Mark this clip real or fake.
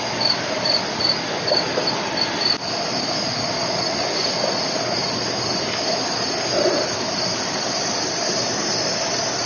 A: real